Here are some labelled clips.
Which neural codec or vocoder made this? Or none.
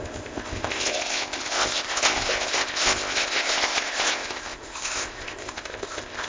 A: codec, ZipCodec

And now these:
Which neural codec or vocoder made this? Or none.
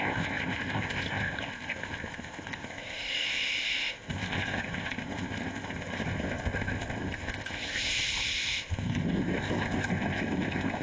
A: codec, ZipCodec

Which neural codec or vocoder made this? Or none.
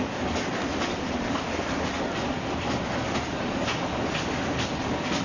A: none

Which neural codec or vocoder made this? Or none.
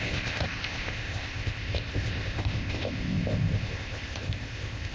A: codec, ZipCodec